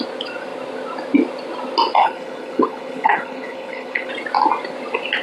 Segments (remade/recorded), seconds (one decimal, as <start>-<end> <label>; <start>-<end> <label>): 0.0-2.0 recorded; 2.0-4.1 remade; 4.1-5.2 recorded